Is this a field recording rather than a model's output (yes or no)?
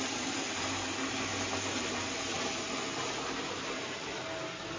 yes